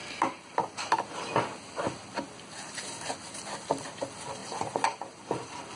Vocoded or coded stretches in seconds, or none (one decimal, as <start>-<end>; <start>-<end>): 4.4-5.7